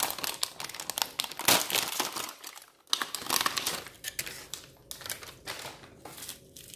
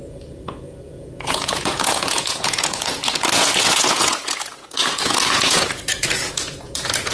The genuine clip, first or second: first